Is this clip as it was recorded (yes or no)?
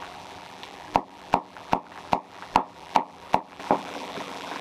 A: no